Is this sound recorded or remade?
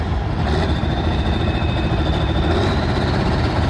remade